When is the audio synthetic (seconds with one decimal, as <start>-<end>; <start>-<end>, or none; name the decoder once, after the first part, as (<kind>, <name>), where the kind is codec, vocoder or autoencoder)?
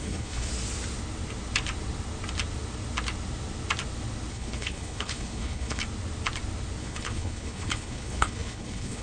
0.0-0.5 (codec, HILCodec); 4.3-5.8; 6.8-9.0